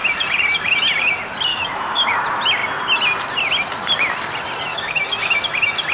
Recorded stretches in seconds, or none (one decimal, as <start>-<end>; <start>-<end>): 0.0-1.5; 2.1-4.7; 5.4-5.9